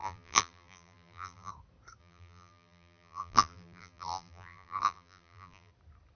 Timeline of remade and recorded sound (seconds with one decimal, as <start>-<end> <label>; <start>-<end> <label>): 0.0-1.5 remade; 1.5-2.0 recorded; 2.0-5.7 remade; 5.7-6.2 recorded